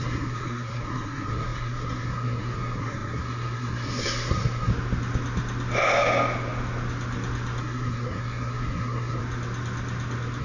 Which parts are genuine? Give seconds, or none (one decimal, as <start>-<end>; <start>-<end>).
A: 4.7-7.6; 9.2-10.4